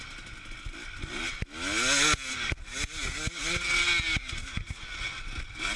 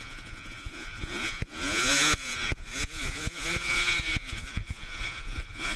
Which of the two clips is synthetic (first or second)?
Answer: second